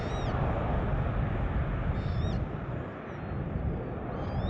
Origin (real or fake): real